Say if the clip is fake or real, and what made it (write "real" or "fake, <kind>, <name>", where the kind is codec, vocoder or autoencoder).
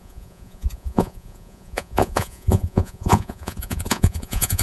fake, vocoder, Vocos